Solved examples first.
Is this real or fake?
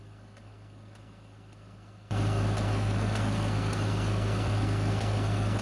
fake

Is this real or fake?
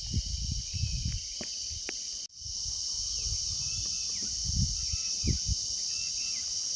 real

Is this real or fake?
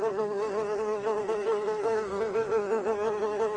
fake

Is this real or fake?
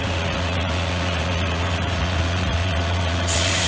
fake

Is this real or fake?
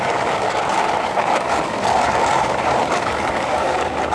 fake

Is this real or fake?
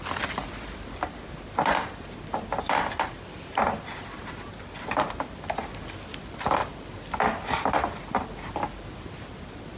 real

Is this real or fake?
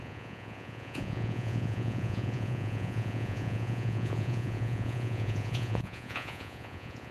fake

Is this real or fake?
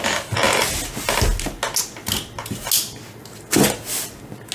real